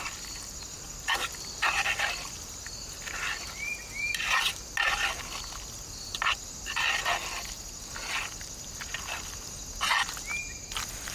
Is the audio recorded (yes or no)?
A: yes